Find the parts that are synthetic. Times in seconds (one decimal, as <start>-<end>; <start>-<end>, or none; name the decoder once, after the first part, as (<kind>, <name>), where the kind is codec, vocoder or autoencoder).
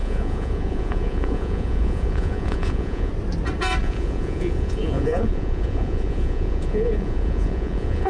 0.0-3.1 (vocoder, Vocos); 3.8-8.1